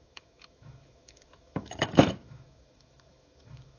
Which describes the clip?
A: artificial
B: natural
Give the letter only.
A